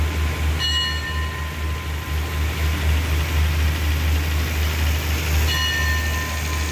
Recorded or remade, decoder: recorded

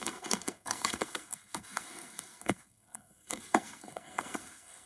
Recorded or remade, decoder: remade, codec, SNAC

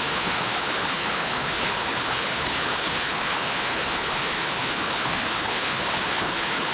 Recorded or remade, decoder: remade, codec, HILCodec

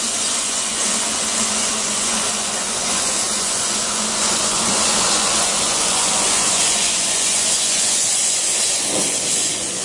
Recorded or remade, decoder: remade, vocoder, Vocos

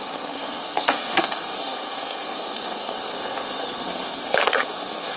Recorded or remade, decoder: remade, codec, SNAC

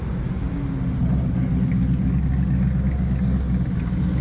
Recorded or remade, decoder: recorded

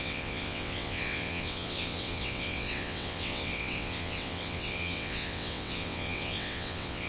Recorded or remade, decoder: remade, vocoder, WaveNeXt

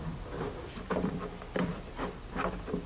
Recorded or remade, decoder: remade, vocoder, BigVGAN v2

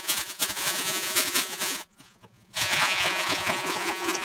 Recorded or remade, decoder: remade, vocoder, Vocos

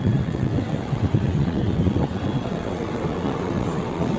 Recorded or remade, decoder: remade, vocoder, WaveNeXt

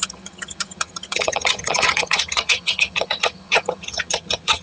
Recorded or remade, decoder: remade, vocoder, HiFi-GAN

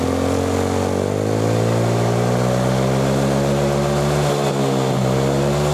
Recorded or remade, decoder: recorded